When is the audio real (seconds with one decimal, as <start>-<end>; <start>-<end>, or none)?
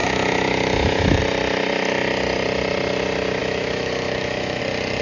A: 1.2-3.4; 4.6-5.0